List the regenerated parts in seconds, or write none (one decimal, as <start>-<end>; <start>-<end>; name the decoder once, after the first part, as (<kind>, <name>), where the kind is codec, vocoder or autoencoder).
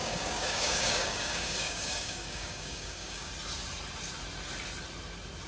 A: 0.0-3.3 (codec, DAC)